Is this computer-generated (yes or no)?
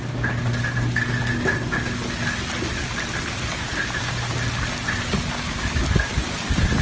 no